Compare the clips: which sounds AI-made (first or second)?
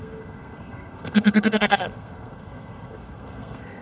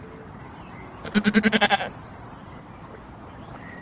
first